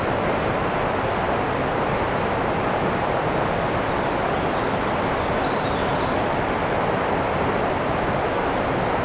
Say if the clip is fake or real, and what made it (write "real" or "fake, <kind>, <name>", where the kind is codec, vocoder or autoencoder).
real